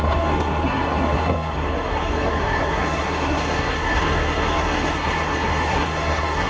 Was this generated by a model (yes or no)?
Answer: yes